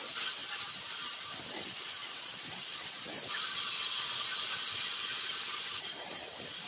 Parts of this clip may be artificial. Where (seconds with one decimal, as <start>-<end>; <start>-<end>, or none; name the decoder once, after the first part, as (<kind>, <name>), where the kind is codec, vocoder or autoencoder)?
2.3-2.8 (vocoder, BigVGAN v2)